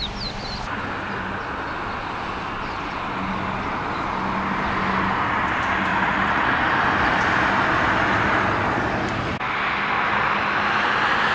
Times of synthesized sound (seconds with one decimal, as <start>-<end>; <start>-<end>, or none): 5.9-6.5